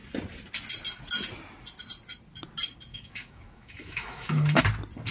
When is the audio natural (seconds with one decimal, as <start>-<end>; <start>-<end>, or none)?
0.0-2.9; 4.6-5.1